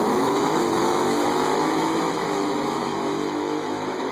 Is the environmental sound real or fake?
fake